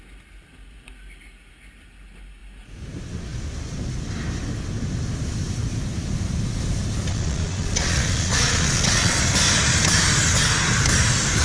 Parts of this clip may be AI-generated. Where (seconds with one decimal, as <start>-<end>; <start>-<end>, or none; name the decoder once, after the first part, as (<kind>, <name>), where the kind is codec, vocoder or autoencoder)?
7.1-9.2 (vocoder, Vocos)